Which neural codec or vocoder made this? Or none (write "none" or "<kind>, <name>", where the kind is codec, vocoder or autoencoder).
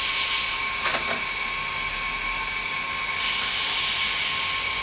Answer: none